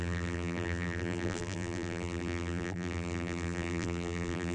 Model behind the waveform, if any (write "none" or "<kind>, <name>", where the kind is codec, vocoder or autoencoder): vocoder, BigVGAN v2